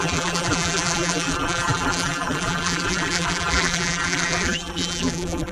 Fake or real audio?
fake